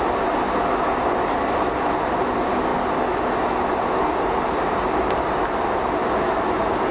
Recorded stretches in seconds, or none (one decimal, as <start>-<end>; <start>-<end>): 0.0-6.9